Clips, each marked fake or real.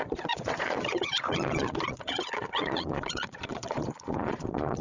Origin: fake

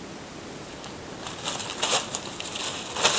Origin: real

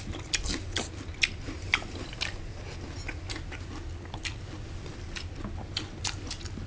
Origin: real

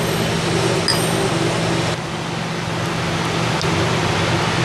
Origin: real